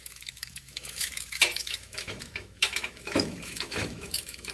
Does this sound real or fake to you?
fake